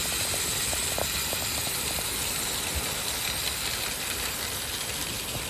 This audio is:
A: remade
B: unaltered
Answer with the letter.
B